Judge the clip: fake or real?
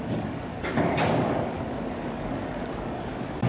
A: fake